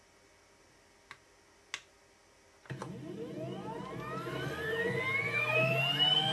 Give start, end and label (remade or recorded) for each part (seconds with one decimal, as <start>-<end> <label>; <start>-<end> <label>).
0.0-6.3 recorded